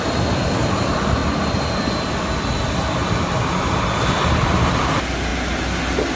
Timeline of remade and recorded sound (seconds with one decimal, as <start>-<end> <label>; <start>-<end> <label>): 0.0-6.2 recorded